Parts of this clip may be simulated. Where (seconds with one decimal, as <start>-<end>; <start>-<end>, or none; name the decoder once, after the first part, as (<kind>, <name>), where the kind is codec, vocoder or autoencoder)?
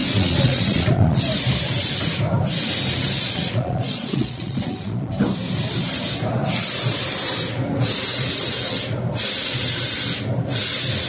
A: 0.0-1.2 (vocoder, Vocos); 3.2-5.1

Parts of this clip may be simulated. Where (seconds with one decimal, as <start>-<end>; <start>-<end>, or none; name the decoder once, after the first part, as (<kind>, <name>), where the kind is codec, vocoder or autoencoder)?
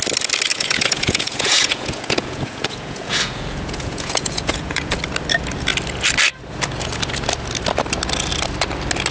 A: 0.5-5.0 (vocoder, Vocos)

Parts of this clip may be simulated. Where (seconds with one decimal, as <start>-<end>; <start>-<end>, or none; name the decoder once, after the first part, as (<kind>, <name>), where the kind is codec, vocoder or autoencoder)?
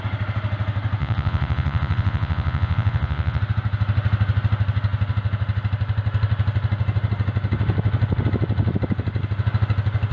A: 1.0-3.4 (vocoder, Vocos)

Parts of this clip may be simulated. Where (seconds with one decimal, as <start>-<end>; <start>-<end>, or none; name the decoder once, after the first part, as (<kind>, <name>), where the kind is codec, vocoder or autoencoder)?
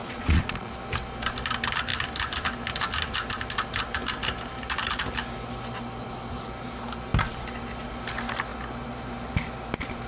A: 0.0-0.7 (vocoder, Vocos)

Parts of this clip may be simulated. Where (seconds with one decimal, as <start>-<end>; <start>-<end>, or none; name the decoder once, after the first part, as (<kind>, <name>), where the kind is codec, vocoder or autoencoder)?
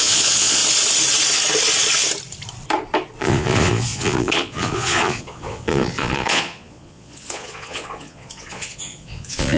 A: 0.0-0.6 (vocoder, Vocos); 3.2-9.6